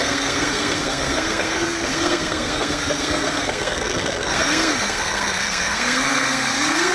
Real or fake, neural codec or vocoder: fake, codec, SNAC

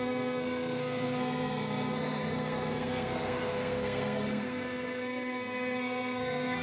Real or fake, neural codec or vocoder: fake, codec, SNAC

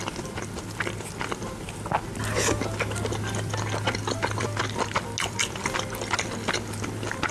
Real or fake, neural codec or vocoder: real